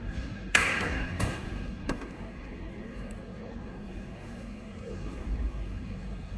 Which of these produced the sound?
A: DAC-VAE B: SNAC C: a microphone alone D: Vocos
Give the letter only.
B